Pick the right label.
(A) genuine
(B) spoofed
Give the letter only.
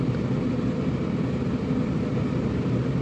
A